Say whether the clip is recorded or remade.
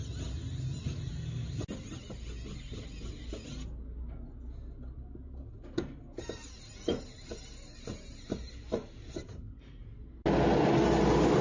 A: recorded